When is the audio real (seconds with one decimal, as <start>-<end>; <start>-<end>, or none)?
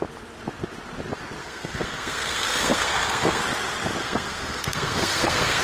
0.0-1.4; 3.4-4.0